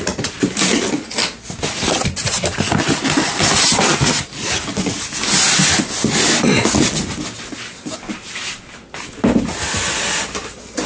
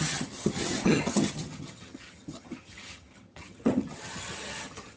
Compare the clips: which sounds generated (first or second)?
second